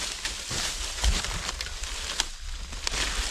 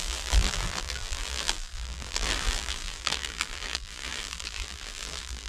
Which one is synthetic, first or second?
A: second